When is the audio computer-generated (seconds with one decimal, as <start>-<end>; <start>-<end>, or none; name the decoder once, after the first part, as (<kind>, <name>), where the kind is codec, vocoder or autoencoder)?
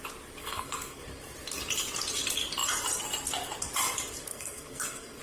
0.4-1.0 (codec, SNAC); 4.3-5.2